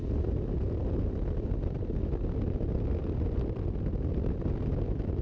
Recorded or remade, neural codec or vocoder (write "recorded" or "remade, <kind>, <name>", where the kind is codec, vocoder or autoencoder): recorded